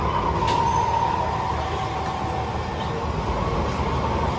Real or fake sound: real